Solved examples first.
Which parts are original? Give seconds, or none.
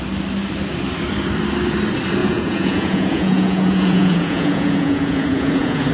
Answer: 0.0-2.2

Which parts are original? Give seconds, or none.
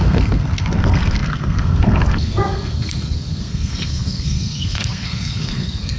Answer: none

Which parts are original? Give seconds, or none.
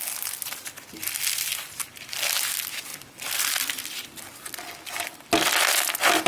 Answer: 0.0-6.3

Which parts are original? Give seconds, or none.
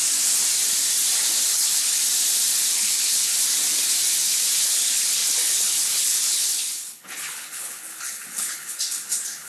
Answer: 0.0-1.5; 2.0-2.7; 3.3-4.6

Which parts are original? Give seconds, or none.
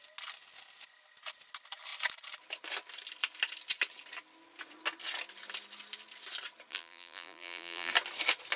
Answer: 0.0-6.7; 7.9-8.6